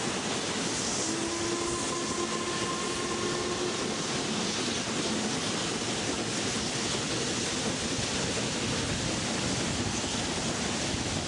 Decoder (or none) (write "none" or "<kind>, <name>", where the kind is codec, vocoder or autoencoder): none